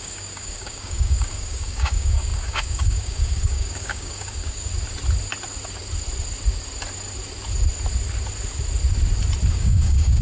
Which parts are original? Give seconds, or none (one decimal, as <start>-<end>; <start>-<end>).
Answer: 4.7-9.5

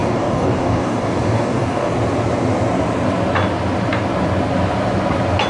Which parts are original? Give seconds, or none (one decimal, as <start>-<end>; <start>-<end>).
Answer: 1.9-5.5

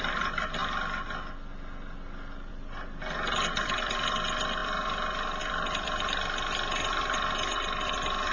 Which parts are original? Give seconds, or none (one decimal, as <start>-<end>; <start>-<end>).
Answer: 0.6-2.5

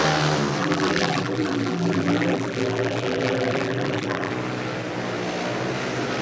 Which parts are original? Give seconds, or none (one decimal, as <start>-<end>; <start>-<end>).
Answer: 0.0-0.6; 4.3-6.2

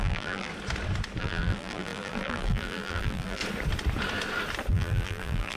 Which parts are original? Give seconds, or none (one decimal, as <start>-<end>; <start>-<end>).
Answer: 0.5-1.2; 3.4-4.7

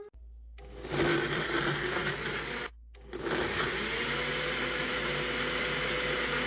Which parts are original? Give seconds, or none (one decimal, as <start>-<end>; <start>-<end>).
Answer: 0.0-6.5

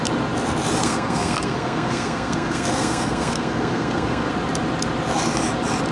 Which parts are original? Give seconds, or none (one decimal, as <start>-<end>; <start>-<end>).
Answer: 0.0-0.8; 4.3-5.9